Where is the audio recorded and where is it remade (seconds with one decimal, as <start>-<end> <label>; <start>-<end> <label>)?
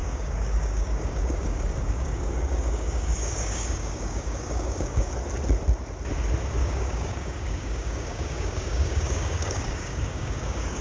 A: 0.0-5.1 remade; 5.1-6.6 recorded; 6.6-10.8 remade